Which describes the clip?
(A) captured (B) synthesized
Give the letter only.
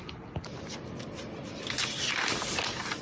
A